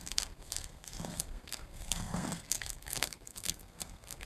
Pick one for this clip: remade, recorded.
remade